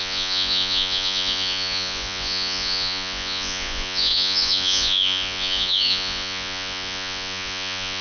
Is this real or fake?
fake